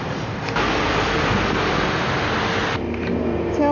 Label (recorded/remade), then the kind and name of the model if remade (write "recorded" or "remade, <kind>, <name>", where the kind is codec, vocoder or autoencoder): recorded